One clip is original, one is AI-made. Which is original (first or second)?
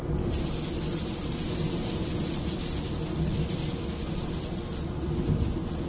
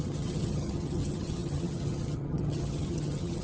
first